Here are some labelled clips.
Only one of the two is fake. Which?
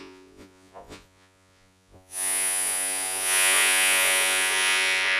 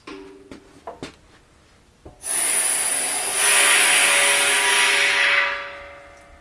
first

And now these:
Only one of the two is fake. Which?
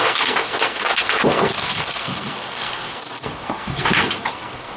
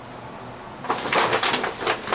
first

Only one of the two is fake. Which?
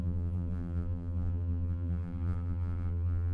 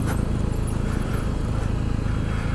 first